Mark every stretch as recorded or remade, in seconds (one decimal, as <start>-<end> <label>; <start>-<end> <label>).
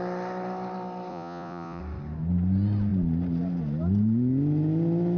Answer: 0.0-1.1 recorded; 1.1-1.8 remade; 1.8-5.2 recorded